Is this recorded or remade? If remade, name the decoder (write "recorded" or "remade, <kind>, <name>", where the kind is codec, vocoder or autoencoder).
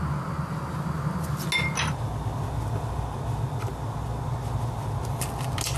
recorded